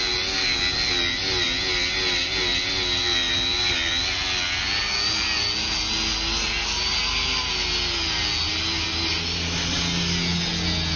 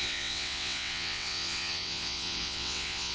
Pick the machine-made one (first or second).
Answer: second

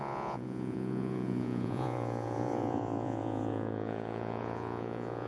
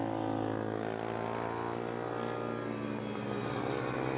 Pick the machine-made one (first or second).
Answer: first